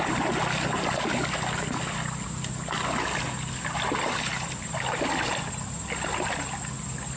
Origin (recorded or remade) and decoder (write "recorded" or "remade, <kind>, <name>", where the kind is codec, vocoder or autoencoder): recorded